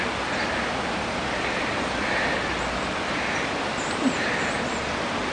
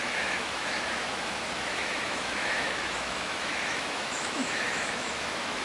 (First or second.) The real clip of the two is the first